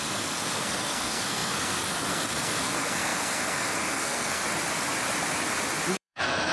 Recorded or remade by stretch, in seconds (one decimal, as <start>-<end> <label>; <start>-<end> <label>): 0.0-4.4 remade; 4.4-5.9 recorded; 5.9-6.5 remade